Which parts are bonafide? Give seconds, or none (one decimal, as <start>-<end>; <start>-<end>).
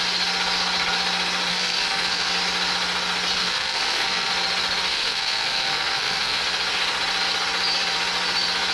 0.0-1.5; 2.3-3.4; 4.3-4.9; 6.4-8.7